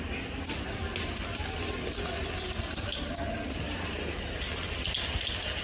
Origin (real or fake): real